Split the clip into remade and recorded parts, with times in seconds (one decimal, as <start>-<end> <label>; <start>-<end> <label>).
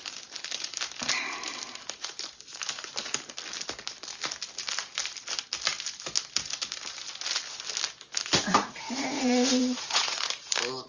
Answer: 0.0-8.5 recorded; 8.5-10.2 remade; 10.2-10.9 recorded